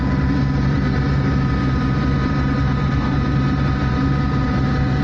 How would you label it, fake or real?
fake